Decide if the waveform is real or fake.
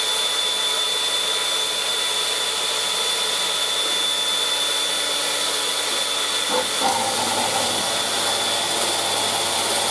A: real